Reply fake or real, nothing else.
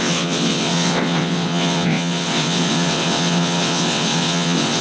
fake